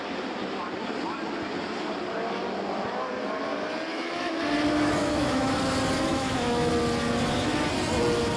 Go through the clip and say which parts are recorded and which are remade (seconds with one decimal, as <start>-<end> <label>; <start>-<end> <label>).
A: 0.0-3.9 recorded; 3.9-4.4 remade; 4.4-5.0 recorded; 5.0-5.5 remade; 5.5-6.1 recorded; 6.1-6.7 remade; 6.7-8.4 recorded